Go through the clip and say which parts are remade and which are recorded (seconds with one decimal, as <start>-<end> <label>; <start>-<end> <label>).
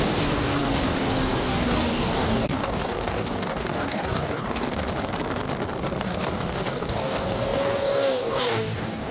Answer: 0.0-4.7 remade; 4.7-6.0 recorded; 6.0-9.1 remade